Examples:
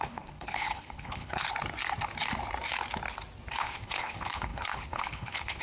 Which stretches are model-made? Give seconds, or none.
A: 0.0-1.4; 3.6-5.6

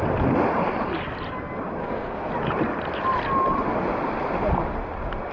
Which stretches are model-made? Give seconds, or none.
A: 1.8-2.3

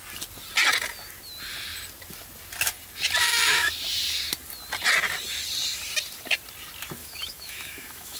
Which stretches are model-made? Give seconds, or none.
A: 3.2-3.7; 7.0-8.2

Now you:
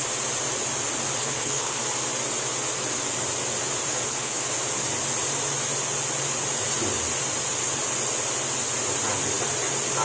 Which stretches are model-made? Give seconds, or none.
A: 1.2-1.8; 3.9-4.5

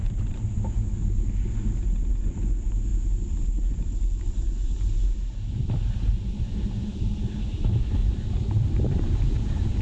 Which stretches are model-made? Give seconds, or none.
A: 0.0-1.5; 8.0-9.8

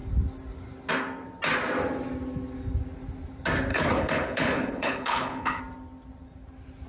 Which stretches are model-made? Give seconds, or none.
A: 3.7-5.6

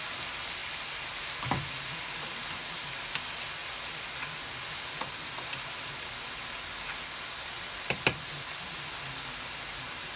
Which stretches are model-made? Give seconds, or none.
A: none